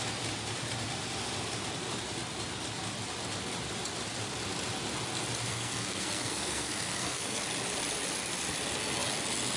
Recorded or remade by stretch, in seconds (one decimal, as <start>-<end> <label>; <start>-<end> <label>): 0.0-5.5 recorded; 5.5-7.4 remade; 7.4-9.6 recorded